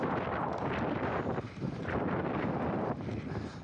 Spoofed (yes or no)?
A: no